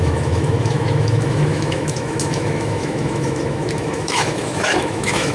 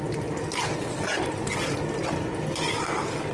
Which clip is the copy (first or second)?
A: first